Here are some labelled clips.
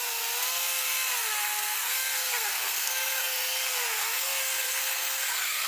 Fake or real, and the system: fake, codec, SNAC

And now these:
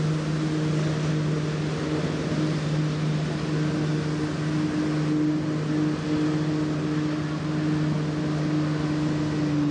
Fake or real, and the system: real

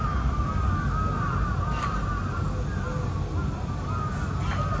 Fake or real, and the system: real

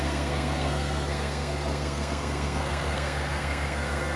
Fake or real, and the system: fake, codec, SNAC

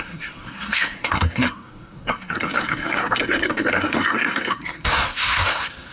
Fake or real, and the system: fake, codec, SNAC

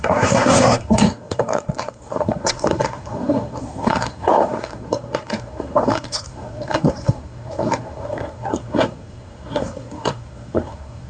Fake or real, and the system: fake, codec, SNAC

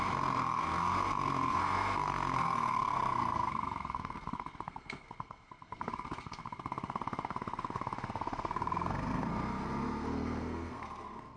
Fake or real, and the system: fake, codec, SNAC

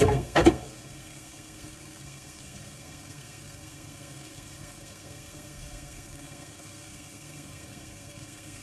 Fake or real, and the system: fake, codec, SNAC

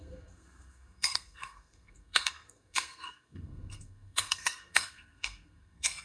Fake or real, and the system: fake, codec, SNAC